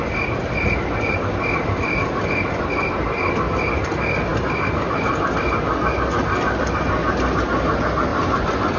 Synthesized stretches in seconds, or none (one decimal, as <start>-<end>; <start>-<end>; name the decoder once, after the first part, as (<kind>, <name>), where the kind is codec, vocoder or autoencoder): none